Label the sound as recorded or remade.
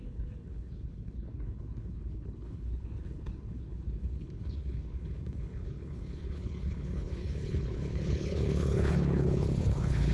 remade